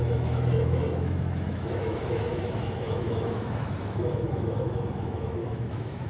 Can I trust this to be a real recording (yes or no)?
no